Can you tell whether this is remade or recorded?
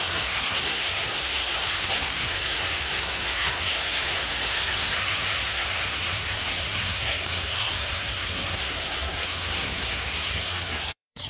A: remade